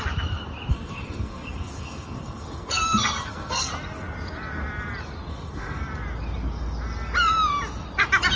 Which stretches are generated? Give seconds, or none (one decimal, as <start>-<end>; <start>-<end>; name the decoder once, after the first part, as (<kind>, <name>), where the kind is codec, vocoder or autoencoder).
0.7-3.7 (codec, SNAC); 5.3-5.8